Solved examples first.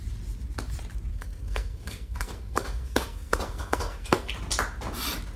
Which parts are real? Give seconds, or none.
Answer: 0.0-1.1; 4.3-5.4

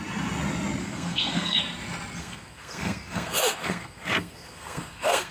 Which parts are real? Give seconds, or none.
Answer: 0.0-0.8; 1.6-2.2

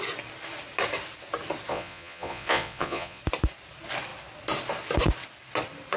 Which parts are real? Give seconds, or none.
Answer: 0.0-1.7; 3.2-6.0

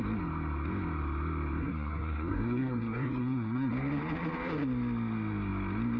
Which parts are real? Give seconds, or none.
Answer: 0.0-1.6; 3.7-6.0

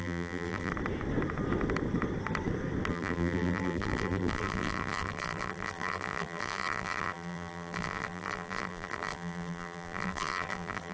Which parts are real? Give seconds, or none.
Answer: 0.7-2.9

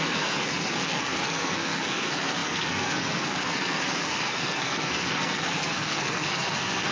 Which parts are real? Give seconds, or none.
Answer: none

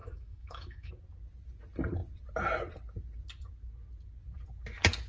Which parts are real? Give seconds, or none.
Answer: 0.9-5.1

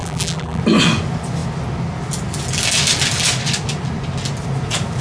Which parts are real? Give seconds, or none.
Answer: 0.6-5.0